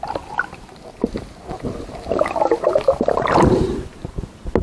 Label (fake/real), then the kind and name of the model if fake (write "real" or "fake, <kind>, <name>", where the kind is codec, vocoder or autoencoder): real